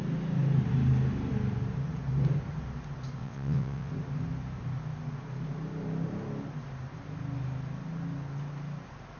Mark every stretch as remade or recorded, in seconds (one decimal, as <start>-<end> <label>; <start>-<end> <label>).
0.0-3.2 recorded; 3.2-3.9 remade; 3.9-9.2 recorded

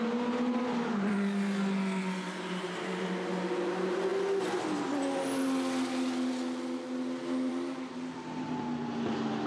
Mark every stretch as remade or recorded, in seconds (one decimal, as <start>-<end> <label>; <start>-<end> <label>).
0.0-9.5 recorded

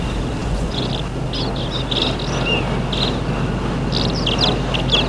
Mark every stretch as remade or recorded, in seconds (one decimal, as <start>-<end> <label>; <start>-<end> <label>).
0.0-0.4 recorded; 0.4-0.9 remade; 0.9-5.1 recorded

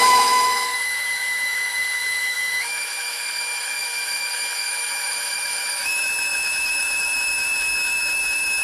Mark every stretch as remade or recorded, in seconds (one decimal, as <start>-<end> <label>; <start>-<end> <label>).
0.0-8.6 remade

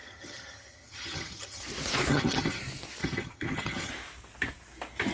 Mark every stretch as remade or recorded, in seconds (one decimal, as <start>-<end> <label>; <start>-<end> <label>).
0.0-1.6 remade; 1.6-2.1 recorded; 2.1-2.6 remade; 2.6-3.0 recorded; 3.0-3.9 remade; 3.9-5.1 recorded